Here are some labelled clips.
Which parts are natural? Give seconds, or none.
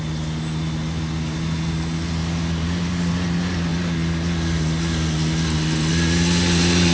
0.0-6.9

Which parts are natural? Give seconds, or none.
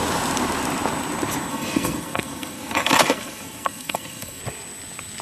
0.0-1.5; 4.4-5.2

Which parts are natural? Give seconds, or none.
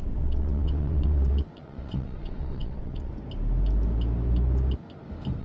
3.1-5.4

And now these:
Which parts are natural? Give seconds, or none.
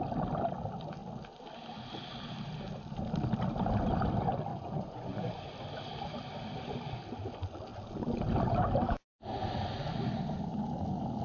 0.0-4.5; 5.3-11.2